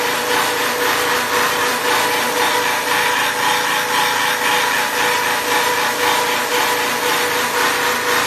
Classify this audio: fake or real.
real